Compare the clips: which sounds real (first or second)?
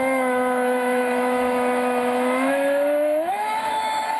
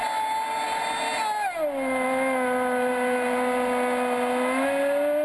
second